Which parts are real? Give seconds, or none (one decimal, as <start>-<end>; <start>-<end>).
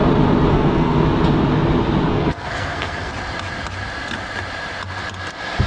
0.0-0.5; 1.0-2.1; 3.1-5.7